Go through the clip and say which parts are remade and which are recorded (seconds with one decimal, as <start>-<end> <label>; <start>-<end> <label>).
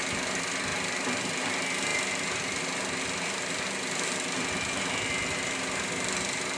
0.0-6.6 recorded